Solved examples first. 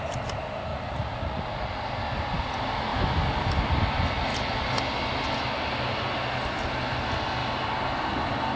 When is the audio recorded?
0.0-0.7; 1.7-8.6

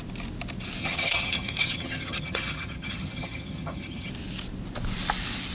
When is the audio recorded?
0.0-0.8; 4.1-5.5

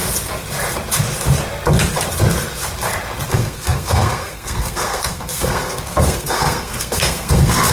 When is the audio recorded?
0.0-3.3